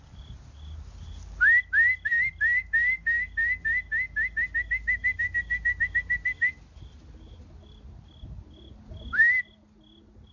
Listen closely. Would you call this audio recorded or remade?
recorded